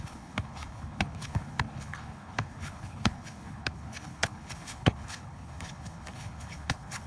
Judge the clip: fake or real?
fake